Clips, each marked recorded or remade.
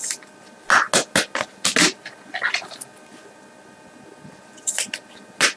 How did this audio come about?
recorded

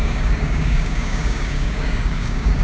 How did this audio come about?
remade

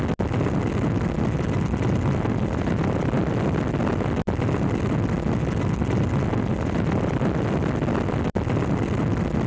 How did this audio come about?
recorded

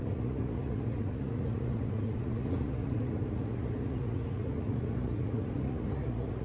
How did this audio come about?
remade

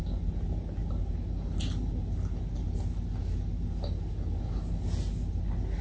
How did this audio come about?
recorded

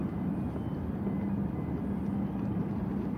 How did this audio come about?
remade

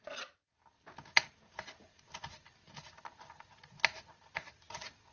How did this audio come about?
recorded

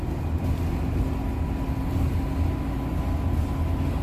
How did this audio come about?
recorded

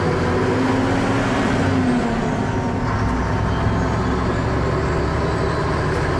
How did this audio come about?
recorded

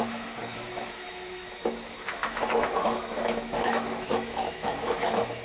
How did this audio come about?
remade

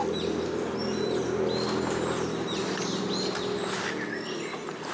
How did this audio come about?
recorded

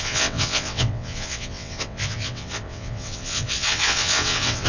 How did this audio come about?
remade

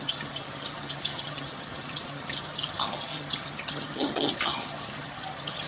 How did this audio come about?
remade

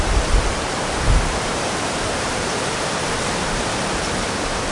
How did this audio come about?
remade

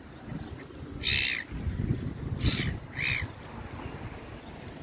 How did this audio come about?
recorded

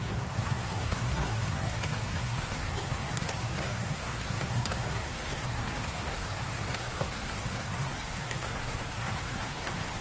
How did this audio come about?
remade